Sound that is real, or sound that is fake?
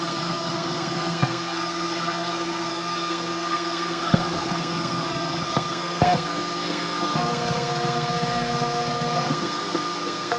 fake